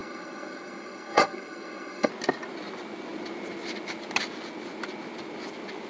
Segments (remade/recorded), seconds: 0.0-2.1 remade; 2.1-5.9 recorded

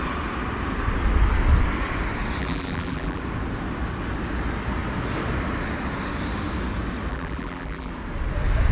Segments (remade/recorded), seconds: 0.0-2.4 recorded; 2.4-3.2 remade; 3.2-7.1 recorded; 7.1-7.9 remade; 7.9-8.7 recorded

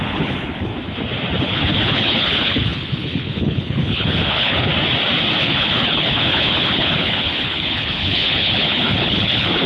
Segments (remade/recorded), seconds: 0.0-0.7 remade; 0.7-1.4 recorded; 1.4-4.7 remade; 4.7-5.4 recorded; 5.4-9.7 remade